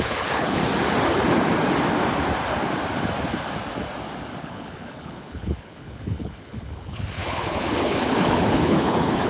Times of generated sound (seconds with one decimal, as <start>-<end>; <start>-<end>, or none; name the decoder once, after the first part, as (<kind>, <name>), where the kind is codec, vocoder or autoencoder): 0.0-0.6 (codec, HILCodec); 4.4-9.3